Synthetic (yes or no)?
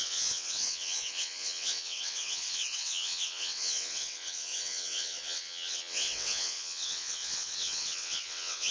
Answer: yes